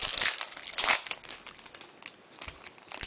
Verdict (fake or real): real